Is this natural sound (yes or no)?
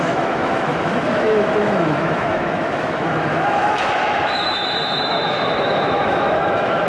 no